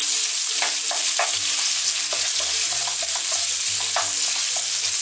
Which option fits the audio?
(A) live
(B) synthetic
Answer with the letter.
A